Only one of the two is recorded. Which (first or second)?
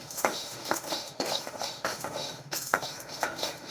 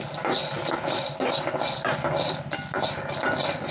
second